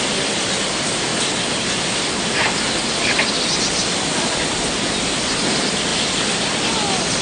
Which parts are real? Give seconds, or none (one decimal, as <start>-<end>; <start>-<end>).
0.0-7.2

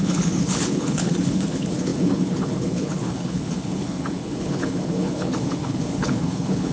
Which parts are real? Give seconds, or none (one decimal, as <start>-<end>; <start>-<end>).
none